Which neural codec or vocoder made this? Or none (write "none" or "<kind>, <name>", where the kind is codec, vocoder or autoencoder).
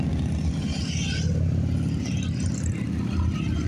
none